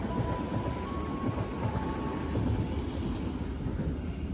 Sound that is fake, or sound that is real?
real